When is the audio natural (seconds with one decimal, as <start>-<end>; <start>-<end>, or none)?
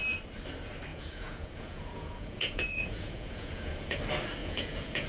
0.0-0.9; 4.0-4.4